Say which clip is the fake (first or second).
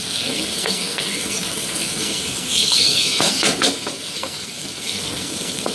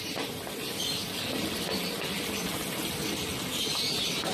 first